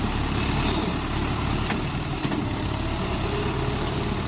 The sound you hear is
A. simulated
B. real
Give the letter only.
B